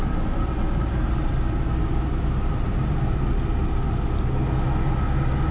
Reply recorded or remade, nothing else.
recorded